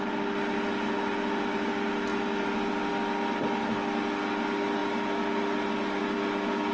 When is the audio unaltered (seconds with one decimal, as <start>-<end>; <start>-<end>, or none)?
0.0-6.7